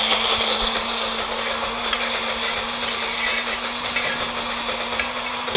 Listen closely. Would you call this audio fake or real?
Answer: real